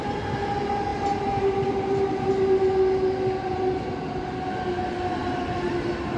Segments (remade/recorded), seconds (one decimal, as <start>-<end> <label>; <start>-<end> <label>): 0.0-5.2 recorded; 5.2-5.7 remade; 5.7-6.2 recorded